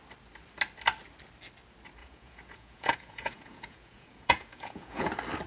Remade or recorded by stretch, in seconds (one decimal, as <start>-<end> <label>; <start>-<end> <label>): 0.0-2.0 recorded; 2.0-5.1 remade; 5.1-5.5 recorded

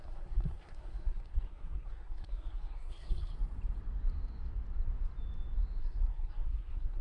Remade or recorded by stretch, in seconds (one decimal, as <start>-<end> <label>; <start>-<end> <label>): 0.0-3.3 remade; 3.3-5.8 recorded; 5.8-7.0 remade